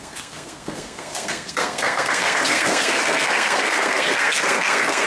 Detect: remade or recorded remade